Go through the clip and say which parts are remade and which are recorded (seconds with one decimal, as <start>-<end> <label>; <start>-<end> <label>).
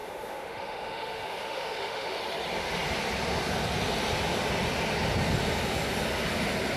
0.0-2.2 remade; 2.2-6.8 recorded